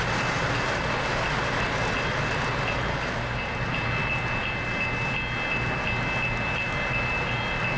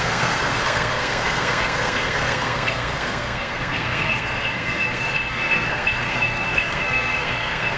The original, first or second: first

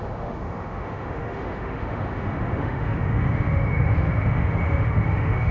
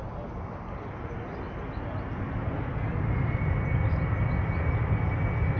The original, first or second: second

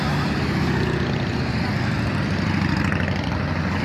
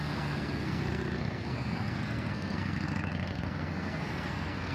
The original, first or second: first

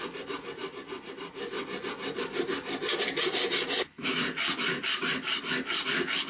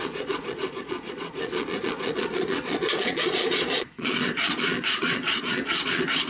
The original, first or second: first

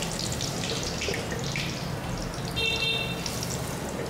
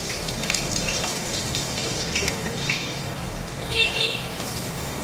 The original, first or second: first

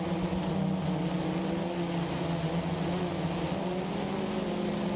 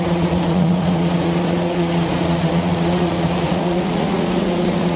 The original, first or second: first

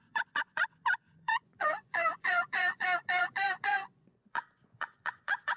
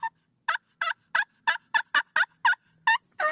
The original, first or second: second